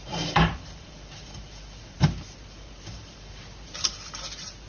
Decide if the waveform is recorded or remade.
remade